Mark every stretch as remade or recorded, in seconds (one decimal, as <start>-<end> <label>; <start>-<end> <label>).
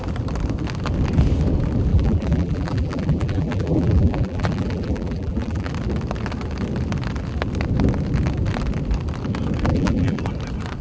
0.0-1.9 recorded; 1.9-5.7 remade; 5.7-9.7 recorded; 9.7-10.2 remade; 10.2-10.8 recorded